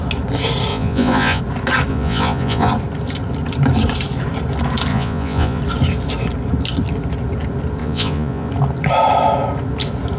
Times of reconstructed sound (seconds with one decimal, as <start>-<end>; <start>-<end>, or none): 0.7-1.4; 1.9-2.7; 4.9-5.6; 7.8-8.5